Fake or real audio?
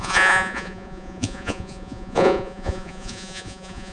fake